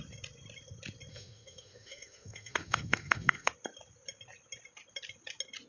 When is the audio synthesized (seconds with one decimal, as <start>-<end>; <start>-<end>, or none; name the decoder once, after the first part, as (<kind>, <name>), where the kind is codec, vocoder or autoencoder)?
1.1-3.5 (autoencoder, DAC-VAE)